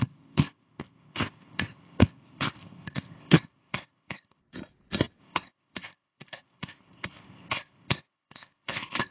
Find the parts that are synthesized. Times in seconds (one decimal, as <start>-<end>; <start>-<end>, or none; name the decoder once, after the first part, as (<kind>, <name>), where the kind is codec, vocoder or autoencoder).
0.0-4.4 (codec, ZipCodec); 5.2-9.1

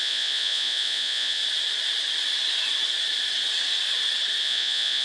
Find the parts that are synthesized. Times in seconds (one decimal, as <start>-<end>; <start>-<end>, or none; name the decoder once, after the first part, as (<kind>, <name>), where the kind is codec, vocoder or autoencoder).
0.0-1.4 (vocoder, Vocos); 4.4-5.0